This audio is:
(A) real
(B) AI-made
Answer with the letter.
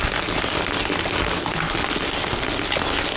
A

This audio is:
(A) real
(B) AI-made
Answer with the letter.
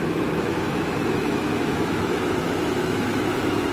B